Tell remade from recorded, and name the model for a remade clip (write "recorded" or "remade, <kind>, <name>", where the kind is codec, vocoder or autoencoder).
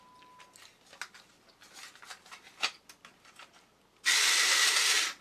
recorded